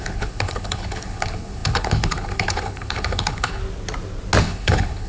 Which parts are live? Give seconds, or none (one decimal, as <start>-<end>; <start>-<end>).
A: 3.6-4.4